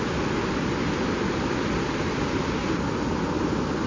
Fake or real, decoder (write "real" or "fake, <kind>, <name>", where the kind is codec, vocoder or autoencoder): real